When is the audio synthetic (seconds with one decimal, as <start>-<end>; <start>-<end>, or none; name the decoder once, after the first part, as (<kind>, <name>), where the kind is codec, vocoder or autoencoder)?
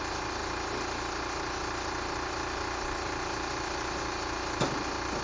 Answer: none